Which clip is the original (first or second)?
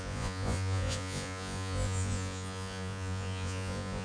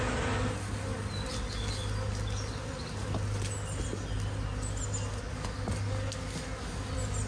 second